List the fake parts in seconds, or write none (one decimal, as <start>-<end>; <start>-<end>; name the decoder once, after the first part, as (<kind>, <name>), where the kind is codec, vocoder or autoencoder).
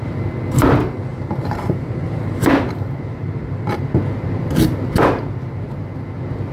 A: 1.1-3.8 (vocoder, BigVGAN v2)